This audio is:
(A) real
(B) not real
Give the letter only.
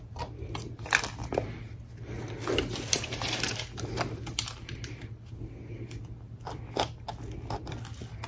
A